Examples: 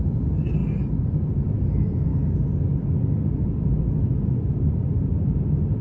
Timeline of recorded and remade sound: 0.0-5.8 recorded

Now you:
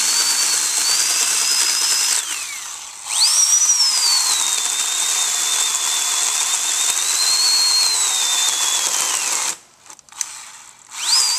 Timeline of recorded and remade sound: 0.0-11.4 recorded